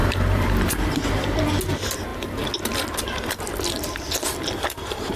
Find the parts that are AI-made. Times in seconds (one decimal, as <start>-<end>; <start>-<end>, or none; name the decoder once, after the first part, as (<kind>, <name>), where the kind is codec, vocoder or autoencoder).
0.0-0.5 (vocoder, BigVGAN v2)